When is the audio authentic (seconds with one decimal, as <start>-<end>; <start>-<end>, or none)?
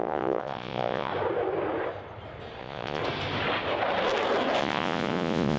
1.1-2.6; 3.0-4.6